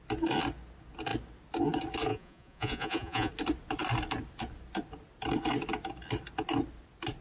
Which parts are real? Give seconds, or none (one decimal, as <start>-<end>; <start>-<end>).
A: 0.0-2.1; 3.3-7.2